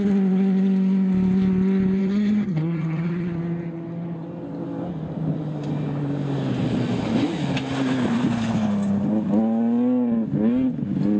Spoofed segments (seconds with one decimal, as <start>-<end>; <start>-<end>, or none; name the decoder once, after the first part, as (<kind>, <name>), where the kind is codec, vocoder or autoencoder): 2.0-3.1 (vocoder, HiFi-GAN)